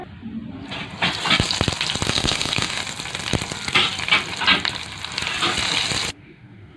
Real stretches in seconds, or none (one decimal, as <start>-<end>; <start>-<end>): 0.0-2.1; 2.8-6.1